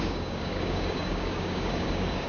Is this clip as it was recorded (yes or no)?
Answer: no